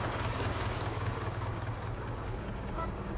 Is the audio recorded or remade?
remade